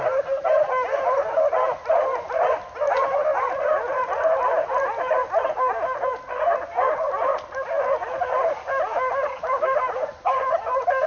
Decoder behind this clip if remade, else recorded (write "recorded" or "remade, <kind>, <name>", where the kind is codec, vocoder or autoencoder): recorded